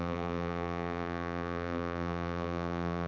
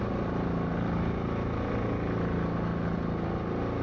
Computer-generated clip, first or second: first